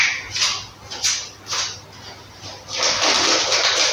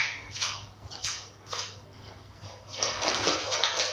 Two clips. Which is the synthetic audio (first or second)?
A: second